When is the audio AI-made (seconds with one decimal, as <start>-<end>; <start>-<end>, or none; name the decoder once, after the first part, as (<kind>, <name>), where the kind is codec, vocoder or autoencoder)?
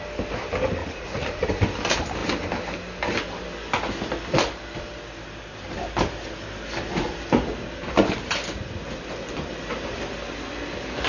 0.8-1.4 (vocoder, Vocos)